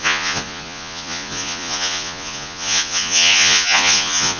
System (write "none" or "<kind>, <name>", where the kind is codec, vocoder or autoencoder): vocoder, Vocos